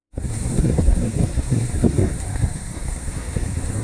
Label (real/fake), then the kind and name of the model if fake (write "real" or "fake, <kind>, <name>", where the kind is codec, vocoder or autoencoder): fake, codec, SNAC